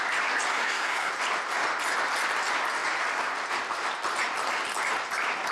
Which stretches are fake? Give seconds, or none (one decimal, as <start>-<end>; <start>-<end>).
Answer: 0.5-1.1

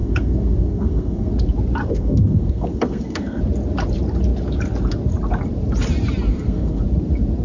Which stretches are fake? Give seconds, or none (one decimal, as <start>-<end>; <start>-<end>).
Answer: 0.0-1.3; 1.8-3.4; 6.3-6.8